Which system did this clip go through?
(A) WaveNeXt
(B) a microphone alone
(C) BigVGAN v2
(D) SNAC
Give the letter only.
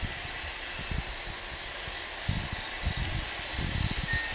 B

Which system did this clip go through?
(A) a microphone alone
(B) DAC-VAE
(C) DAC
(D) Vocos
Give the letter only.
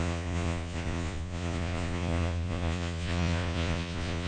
D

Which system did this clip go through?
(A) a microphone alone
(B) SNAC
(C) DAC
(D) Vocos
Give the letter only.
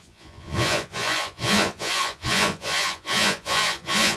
D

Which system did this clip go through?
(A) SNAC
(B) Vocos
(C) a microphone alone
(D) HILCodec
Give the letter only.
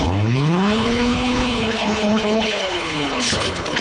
D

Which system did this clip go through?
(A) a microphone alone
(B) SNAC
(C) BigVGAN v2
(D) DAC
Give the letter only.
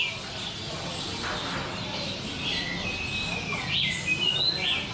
A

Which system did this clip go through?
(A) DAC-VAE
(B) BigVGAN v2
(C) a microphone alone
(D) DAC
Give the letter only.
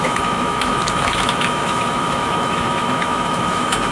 A